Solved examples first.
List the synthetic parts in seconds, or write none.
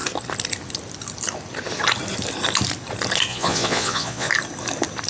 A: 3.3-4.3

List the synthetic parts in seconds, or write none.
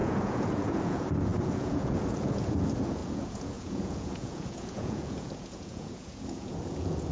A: 0.0-7.1